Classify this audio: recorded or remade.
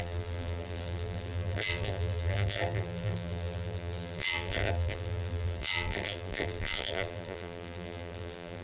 remade